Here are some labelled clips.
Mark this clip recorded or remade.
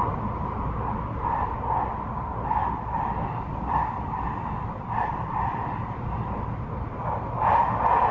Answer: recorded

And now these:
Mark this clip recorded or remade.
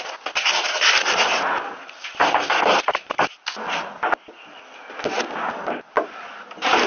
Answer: recorded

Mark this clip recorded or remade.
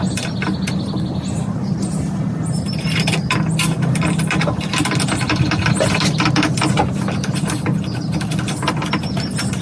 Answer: recorded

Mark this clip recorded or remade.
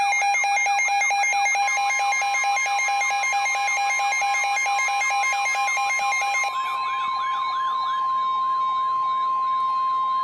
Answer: recorded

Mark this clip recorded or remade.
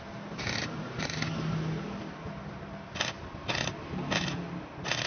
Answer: recorded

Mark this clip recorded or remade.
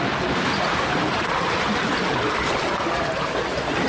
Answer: recorded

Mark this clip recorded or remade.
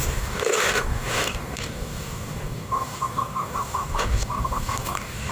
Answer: remade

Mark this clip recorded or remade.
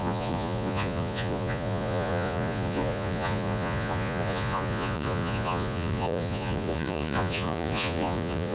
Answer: remade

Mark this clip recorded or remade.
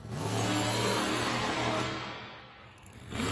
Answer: remade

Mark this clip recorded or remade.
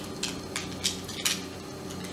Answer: recorded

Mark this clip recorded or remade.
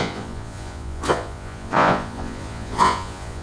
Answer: remade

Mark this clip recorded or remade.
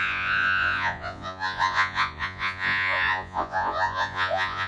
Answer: remade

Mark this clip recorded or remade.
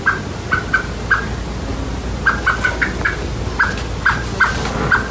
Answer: recorded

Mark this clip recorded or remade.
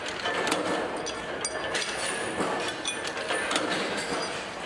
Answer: recorded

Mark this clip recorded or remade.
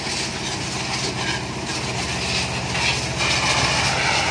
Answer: recorded